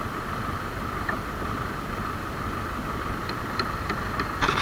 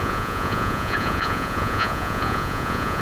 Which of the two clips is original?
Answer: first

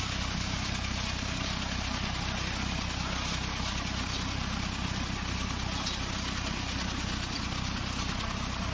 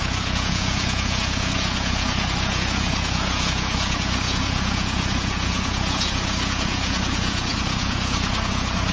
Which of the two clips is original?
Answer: first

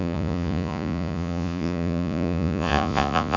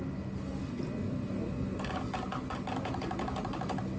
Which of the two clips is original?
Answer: second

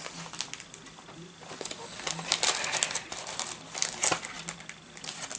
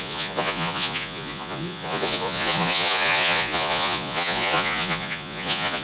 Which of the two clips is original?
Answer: first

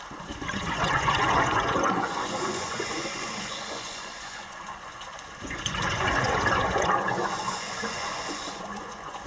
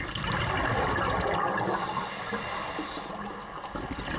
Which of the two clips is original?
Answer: second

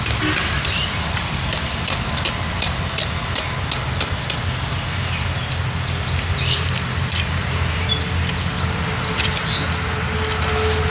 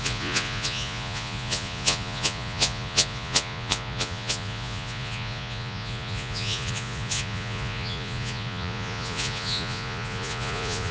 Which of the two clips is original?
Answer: first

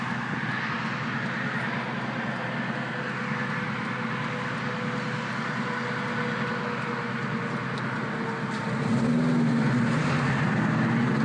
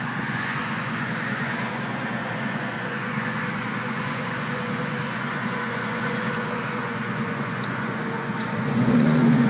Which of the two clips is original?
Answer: first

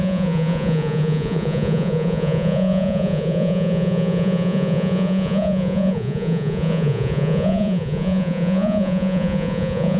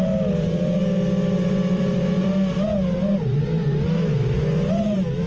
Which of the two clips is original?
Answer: second